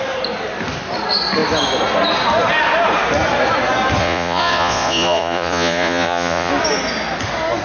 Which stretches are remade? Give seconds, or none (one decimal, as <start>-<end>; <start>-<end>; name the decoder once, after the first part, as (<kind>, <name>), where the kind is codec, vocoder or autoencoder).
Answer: 4.0-6.5 (vocoder, Vocos)